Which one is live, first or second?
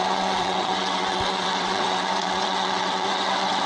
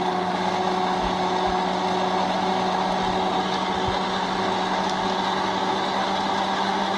second